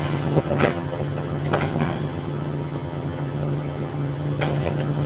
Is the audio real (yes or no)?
no